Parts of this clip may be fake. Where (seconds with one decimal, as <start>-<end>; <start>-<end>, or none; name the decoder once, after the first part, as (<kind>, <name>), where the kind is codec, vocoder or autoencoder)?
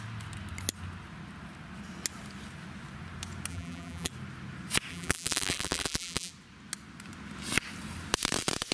3.5-4.1 (vocoder, BigVGAN v2); 4.9-6.3